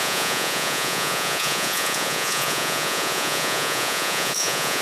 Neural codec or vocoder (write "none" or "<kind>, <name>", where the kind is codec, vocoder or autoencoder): vocoder, Vocos